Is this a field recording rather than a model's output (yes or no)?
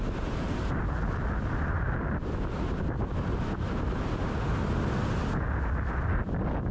yes